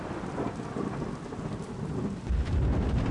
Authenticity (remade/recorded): recorded